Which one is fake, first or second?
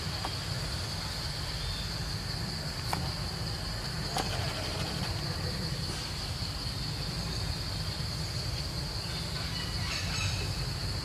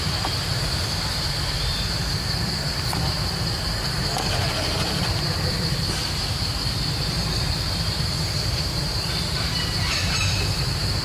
second